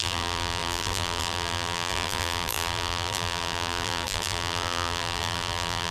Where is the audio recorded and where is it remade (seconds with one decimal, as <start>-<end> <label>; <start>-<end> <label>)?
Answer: 0.0-5.9 remade